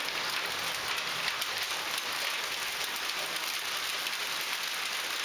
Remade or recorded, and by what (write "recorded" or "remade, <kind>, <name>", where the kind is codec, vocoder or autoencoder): recorded